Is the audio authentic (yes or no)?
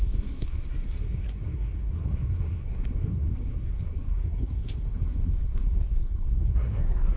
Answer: no